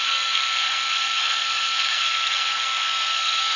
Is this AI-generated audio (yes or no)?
yes